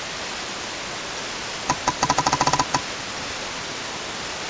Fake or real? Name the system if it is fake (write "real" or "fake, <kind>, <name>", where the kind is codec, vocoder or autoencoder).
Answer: real